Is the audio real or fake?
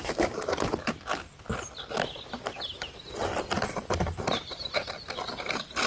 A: real